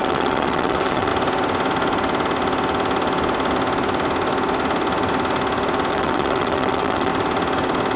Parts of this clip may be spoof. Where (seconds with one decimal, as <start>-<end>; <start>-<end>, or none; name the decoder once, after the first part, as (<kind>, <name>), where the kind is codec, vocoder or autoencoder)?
0.0-1.1 (vocoder, WaveNeXt); 5.9-7.1